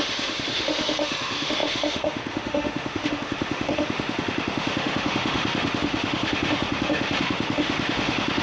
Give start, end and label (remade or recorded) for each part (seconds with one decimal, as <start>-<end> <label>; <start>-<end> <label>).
0.0-8.4 remade